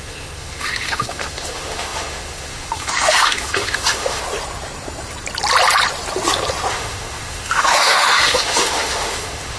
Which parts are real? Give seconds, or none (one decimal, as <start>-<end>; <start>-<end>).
4.2-6.7